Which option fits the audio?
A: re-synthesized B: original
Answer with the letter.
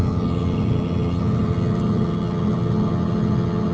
A